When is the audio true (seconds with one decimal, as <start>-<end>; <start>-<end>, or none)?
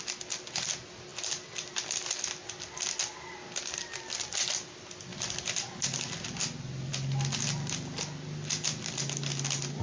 0.0-9.8